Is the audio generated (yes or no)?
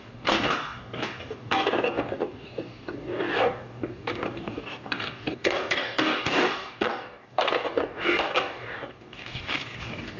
yes